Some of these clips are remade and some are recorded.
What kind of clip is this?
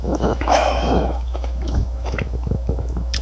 remade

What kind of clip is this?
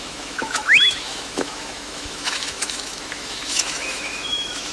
remade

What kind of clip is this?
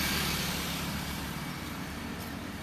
remade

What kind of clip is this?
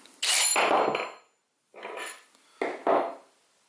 recorded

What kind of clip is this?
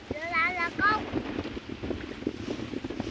recorded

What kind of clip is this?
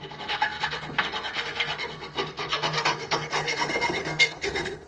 remade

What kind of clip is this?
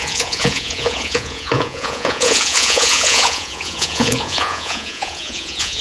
remade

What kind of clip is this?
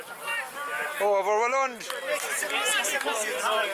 recorded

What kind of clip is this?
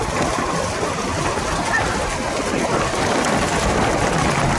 recorded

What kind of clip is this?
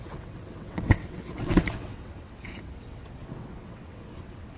remade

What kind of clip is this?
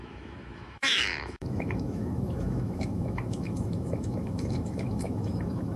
remade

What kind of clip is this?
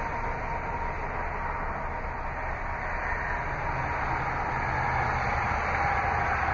recorded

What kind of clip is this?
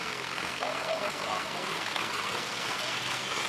remade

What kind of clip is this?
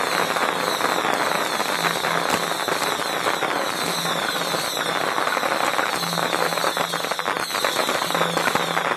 recorded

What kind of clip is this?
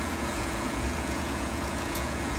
remade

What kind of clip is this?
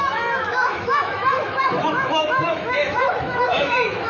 remade